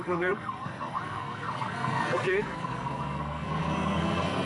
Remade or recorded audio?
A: remade